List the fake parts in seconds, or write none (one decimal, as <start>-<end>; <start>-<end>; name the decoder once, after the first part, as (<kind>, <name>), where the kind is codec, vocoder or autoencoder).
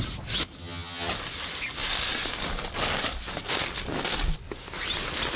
0.6-1.1 (vocoder, HiFi-GAN)